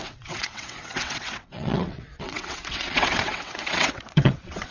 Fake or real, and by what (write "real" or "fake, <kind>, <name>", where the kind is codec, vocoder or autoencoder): fake, vocoder, WaveNeXt